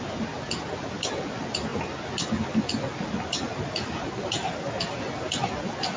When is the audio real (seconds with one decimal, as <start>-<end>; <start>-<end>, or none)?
0.0-6.0